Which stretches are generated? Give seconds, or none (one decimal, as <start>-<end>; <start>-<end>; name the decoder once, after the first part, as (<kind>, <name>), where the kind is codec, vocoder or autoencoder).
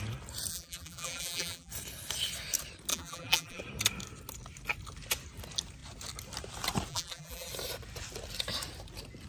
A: 0.5-1.7 (vocoder, BigVGAN v2); 2.9-3.6; 6.9-7.5